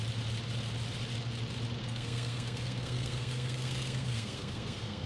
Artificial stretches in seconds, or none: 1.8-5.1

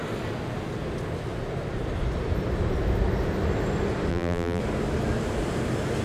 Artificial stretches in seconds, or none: 4.1-4.6